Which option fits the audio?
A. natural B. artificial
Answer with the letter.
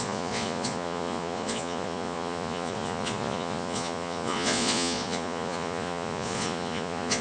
B